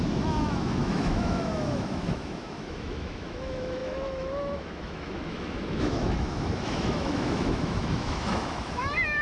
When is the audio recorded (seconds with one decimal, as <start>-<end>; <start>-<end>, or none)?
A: none